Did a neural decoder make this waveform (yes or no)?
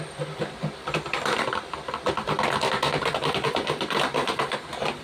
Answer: yes